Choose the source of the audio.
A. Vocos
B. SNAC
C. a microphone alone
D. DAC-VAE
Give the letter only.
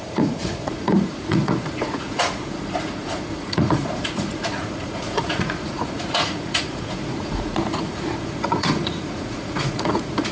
A